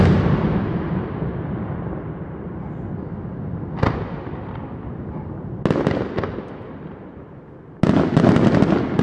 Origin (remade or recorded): recorded